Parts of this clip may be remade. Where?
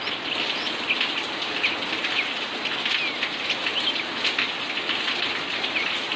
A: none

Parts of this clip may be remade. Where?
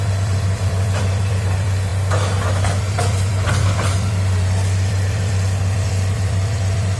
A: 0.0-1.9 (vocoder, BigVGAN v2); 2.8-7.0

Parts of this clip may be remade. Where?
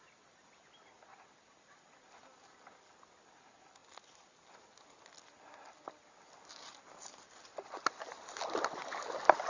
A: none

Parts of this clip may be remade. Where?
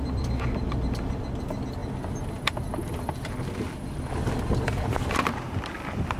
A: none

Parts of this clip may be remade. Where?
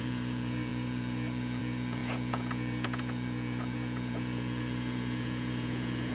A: 0.0-6.1 (vocoder, Vocos)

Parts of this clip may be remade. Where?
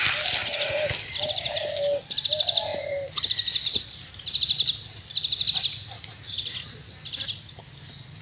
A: 0.4-0.9 (vocoder, Vocos)